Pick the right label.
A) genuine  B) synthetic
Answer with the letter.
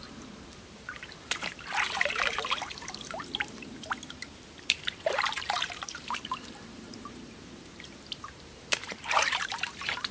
B